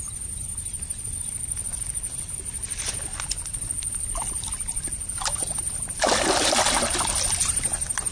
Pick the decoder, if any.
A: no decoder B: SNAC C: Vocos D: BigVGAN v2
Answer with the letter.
A